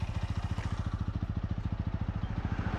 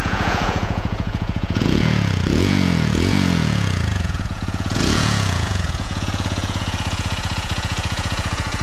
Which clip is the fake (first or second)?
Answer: second